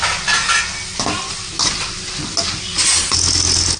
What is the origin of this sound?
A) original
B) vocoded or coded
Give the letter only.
A